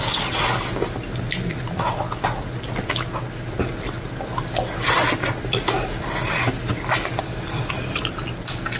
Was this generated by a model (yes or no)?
no